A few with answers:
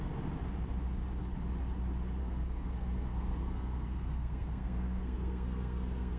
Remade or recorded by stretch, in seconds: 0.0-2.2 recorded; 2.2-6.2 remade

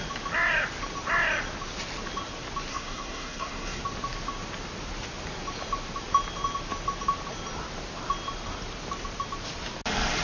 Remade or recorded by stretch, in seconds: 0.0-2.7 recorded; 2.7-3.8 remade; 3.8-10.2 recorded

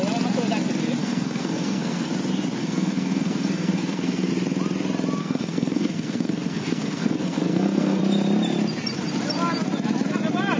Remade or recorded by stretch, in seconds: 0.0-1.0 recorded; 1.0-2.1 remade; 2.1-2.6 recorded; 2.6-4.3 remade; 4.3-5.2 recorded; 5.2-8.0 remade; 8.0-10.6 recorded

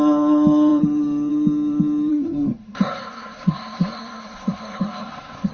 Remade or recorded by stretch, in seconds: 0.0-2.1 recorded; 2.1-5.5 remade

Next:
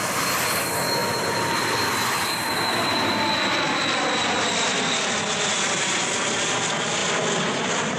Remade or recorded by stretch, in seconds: 0.0-8.0 recorded

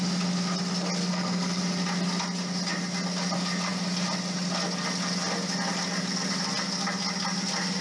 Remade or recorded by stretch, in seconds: 0.0-1.0 recorded; 1.0-1.6 remade; 1.6-7.8 recorded

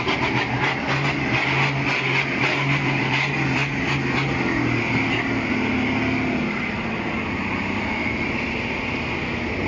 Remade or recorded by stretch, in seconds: 0.0-9.7 recorded

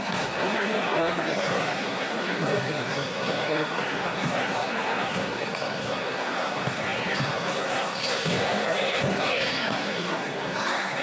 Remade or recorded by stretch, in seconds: 0.0-11.0 remade